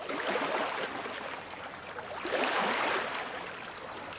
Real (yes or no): yes